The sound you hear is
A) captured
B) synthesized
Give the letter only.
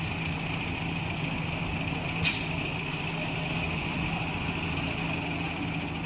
A